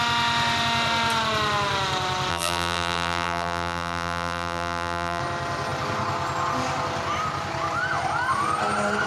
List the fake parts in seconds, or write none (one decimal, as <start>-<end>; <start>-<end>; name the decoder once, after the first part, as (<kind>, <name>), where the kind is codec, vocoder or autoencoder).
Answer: 2.3-5.2 (vocoder, BigVGAN v2)